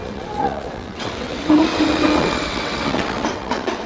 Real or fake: fake